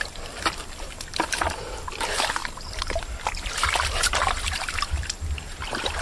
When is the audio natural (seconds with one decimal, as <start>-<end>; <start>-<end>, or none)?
none